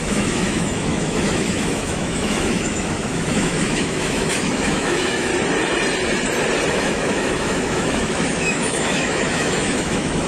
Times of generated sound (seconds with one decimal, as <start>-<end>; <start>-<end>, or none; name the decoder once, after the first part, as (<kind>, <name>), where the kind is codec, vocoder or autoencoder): 0.0-5.3 (autoencoder, DAC-VAE); 6.7-10.3